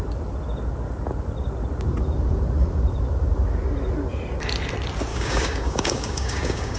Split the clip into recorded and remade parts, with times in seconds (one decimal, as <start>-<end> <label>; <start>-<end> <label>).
0.0-5.1 recorded; 5.1-6.8 remade